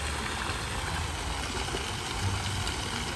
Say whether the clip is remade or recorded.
recorded